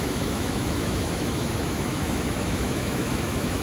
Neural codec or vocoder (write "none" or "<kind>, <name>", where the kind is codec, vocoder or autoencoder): autoencoder, DAC-VAE